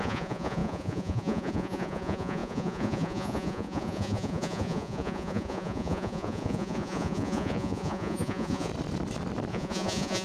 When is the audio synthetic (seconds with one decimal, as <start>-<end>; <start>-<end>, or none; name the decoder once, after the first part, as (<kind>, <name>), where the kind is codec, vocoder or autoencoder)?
0.0-8.7 (vocoder, Vocos); 9.5-10.2